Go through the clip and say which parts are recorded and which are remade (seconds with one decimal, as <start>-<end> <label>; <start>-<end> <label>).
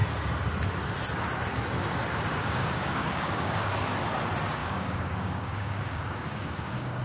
0.0-2.4 recorded; 2.4-3.7 remade; 3.7-4.6 recorded; 4.6-7.0 remade